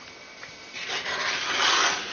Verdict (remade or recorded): recorded